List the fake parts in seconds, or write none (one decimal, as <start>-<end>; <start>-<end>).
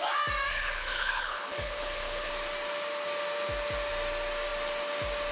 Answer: 0.5-2.3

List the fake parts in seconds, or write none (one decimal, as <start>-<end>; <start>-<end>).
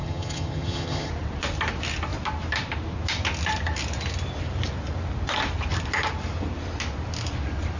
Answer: 0.0-1.1